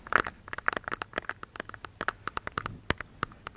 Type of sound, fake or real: real